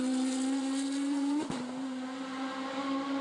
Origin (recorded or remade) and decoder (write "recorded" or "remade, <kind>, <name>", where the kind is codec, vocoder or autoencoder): recorded